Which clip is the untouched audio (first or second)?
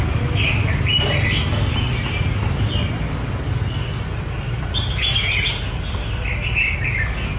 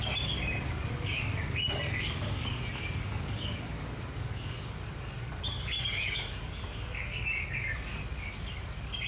first